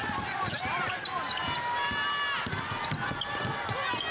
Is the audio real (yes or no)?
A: yes